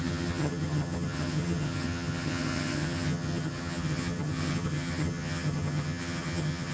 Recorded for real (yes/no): no